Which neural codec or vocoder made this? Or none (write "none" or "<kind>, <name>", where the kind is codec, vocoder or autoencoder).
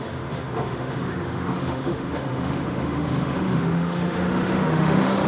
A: autoencoder, DAC-VAE